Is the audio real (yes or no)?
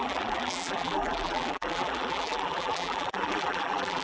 no